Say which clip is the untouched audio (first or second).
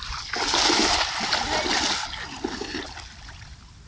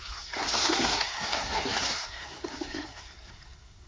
first